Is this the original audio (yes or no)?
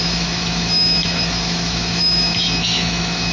no